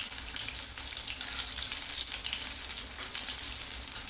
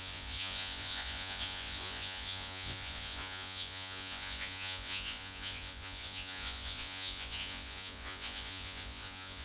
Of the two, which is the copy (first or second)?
second